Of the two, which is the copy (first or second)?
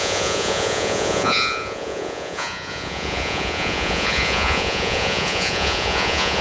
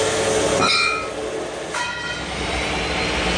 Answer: first